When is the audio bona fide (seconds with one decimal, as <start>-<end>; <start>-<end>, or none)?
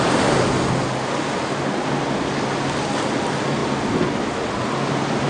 0.0-5.3